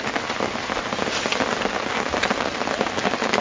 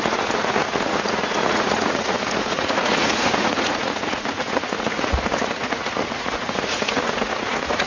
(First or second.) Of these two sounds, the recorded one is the first